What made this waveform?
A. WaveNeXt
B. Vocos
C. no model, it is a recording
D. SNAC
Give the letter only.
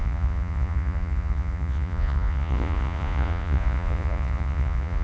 B